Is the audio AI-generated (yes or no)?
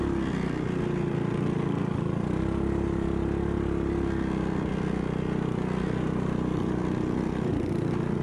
no